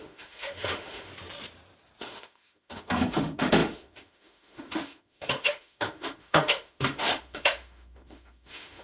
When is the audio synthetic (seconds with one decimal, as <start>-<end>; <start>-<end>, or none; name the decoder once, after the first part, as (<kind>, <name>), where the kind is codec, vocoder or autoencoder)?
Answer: 0.0-1.1 (autoencoder, DAC-VAE); 2.0-8.8

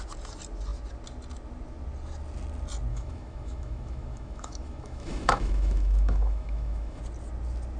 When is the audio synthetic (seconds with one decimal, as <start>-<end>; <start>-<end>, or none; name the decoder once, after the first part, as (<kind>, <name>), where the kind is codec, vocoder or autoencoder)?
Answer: 2.9-7.0 (autoencoder, DAC-VAE)

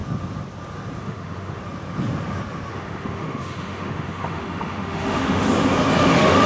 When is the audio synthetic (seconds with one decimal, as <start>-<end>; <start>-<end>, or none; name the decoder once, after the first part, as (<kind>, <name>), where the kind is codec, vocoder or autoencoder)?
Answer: 1.0-1.6 (autoencoder, DAC-VAE); 2.7-5.5; 6.1-6.5

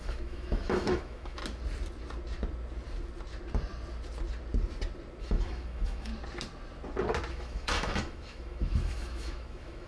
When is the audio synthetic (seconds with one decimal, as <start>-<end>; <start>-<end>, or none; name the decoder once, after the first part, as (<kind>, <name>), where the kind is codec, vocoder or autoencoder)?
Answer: 0.0-1.4 (autoencoder, DAC-VAE); 5.2-6.1; 7.3-9.9